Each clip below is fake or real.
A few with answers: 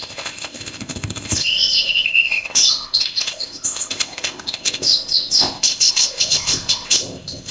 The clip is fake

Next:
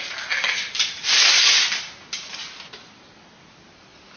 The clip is real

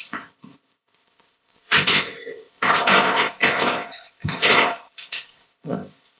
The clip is fake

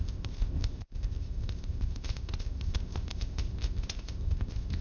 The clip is fake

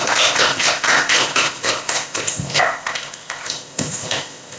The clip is fake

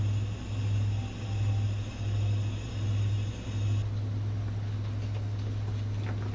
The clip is real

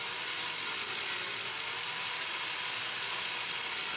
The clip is real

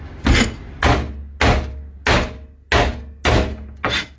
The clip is real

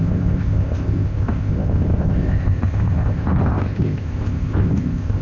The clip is fake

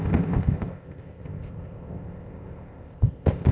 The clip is fake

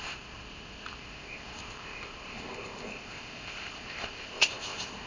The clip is fake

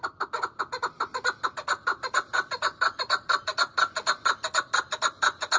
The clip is real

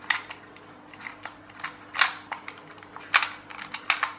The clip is real